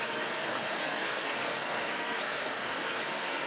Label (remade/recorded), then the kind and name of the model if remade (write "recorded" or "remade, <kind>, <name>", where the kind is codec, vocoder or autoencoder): remade, codec, SNAC